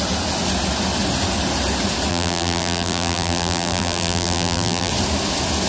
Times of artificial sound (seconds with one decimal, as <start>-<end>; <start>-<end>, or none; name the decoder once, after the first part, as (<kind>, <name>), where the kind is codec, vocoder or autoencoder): 2.1-4.9 (vocoder, BigVGAN v2)